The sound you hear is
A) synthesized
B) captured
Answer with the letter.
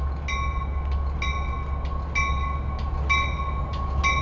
B